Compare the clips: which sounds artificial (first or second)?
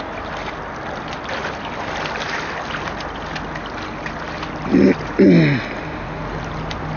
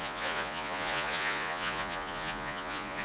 second